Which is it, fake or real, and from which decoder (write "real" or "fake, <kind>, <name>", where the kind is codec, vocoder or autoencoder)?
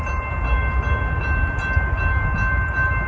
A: real